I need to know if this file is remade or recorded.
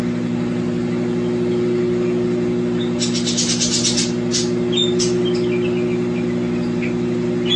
recorded